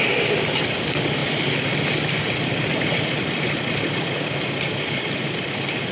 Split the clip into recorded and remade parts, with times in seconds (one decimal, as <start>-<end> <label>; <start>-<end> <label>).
0.0-5.9 recorded